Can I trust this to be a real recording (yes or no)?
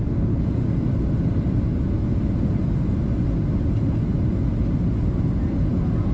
yes